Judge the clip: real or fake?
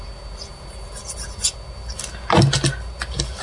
real